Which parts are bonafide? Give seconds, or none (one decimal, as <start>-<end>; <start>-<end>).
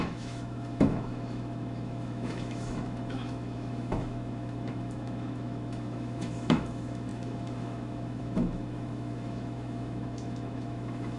none